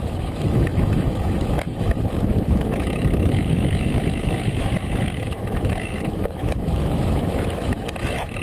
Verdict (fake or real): fake